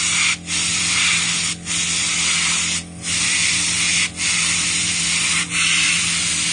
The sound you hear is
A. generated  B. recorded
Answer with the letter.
B